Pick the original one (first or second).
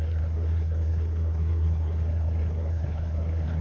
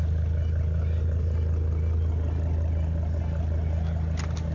second